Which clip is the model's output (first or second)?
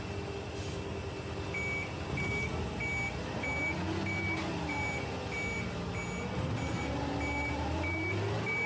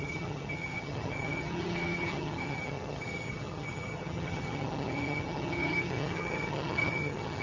second